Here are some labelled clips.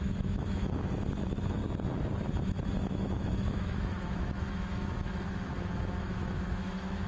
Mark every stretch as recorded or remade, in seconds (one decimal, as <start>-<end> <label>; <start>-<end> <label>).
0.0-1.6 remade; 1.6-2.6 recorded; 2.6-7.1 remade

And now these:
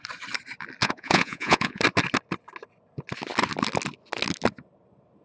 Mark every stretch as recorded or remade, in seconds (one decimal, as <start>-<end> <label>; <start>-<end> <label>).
0.0-0.8 recorded; 0.8-1.8 remade; 1.8-5.2 recorded

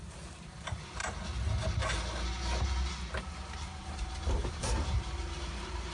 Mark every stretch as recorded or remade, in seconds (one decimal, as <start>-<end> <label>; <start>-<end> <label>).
0.0-1.0 remade; 1.0-3.5 recorded; 3.5-5.9 remade

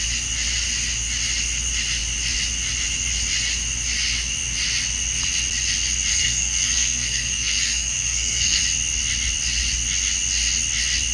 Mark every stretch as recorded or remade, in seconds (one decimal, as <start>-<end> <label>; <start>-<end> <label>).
0.0-6.1 recorded; 6.1-8.6 remade; 8.6-11.1 recorded

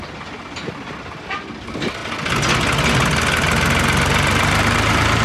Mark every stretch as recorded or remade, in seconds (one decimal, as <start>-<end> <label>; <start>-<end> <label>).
0.0-5.2 recorded

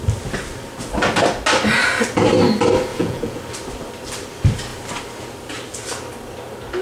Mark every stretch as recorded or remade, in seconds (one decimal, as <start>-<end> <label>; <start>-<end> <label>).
0.0-2.9 recorded; 2.9-3.4 remade; 3.4-6.8 recorded

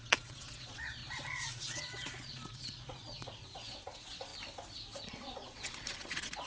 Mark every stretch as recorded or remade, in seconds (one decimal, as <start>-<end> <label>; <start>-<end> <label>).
0.0-1.0 remade; 1.0-1.5 recorded; 1.5-4.3 remade; 4.3-5.1 recorded; 5.1-6.5 remade